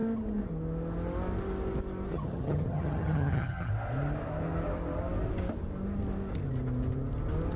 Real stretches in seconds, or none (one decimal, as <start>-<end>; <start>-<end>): 0.0-2.1; 3.7-7.6

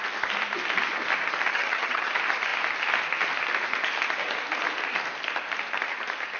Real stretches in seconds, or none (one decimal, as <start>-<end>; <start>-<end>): 0.0-1.5; 2.1-6.4

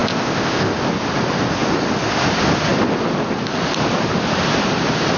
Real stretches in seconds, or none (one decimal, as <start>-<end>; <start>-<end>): 0.7-5.2

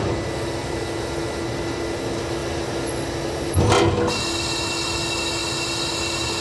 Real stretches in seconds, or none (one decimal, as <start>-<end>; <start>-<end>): 0.0-6.4

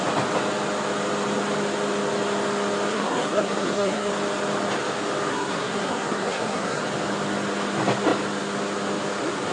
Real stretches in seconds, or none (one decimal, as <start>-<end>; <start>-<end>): 0.0-2.9; 4.1-5.3; 6.8-9.5

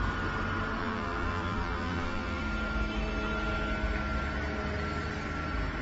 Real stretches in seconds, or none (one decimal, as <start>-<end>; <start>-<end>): 0.0-0.8; 2.4-5.8